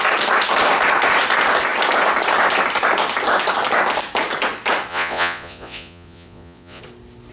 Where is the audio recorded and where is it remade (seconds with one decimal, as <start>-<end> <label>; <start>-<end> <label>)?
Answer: 0.0-4.9 recorded; 4.9-6.8 remade; 6.8-7.3 recorded